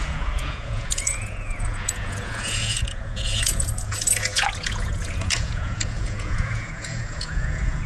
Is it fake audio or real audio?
fake